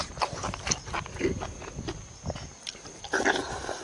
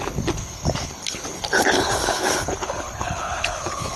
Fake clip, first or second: second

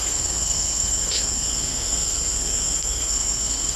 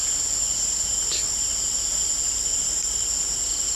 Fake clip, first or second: first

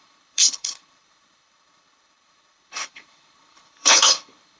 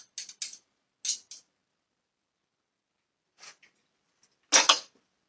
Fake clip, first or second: first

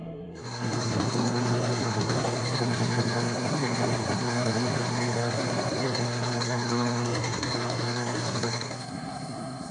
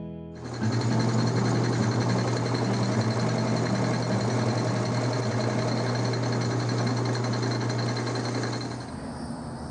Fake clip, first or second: first